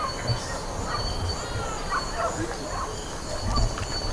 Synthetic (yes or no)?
no